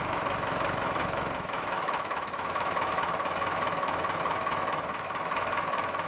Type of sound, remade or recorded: remade